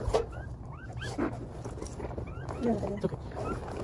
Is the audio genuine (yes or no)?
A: yes